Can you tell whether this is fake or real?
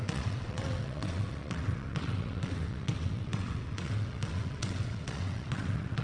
fake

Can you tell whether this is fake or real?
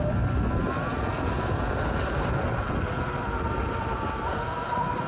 fake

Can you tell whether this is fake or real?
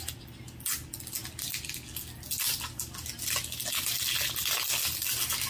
real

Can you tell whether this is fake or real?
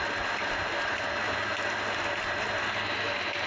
real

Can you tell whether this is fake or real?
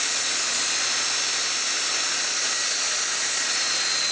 real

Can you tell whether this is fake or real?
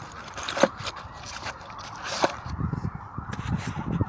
fake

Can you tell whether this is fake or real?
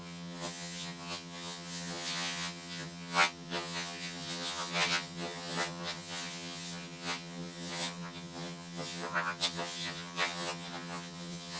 fake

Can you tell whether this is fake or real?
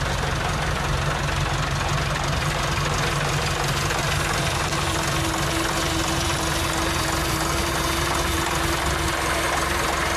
real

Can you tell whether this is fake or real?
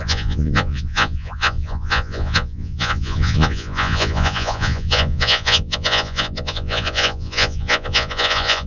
fake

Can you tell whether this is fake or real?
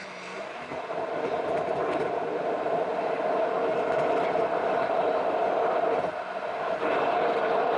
real